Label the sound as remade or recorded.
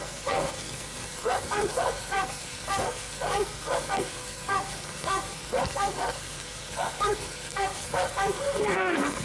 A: remade